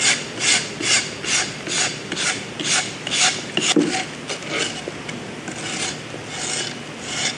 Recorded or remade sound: recorded